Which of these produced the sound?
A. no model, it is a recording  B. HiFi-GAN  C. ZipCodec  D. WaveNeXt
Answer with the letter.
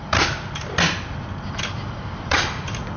A